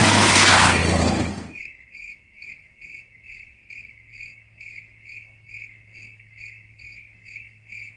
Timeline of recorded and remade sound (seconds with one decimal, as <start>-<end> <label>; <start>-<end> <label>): 0.0-8.0 remade